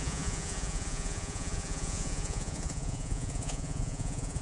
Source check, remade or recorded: remade